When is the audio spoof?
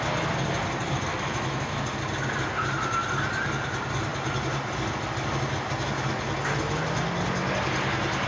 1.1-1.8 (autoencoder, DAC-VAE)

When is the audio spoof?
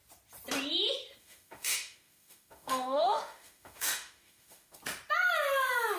1.2-4.8 (autoencoder, DAC-VAE)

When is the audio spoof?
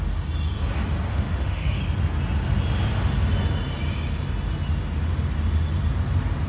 1.1-1.8 (autoencoder, DAC-VAE)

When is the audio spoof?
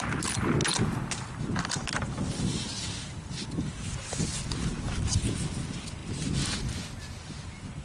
none